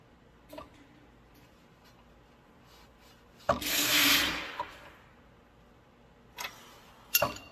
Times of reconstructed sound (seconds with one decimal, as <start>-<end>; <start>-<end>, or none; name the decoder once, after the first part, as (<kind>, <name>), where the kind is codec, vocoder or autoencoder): 3.7-4.2 (codec, SNAC)